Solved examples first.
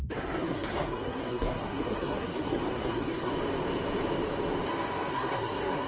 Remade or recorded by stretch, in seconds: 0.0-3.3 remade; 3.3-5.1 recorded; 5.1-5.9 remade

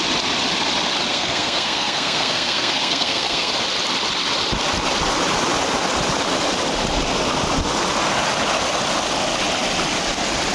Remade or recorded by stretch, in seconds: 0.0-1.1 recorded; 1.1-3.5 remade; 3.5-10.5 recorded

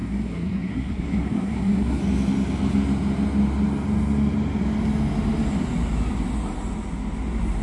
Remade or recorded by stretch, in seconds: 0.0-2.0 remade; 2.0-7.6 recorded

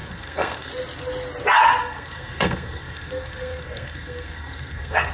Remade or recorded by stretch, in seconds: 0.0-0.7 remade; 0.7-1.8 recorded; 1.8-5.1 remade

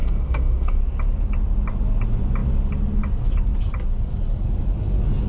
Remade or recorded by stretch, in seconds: 0.0-0.8 remade; 0.8-5.3 recorded

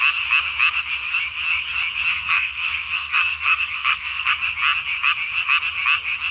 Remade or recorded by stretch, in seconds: 0.0-2.1 recorded; 2.1-4.3 remade; 4.3-6.3 recorded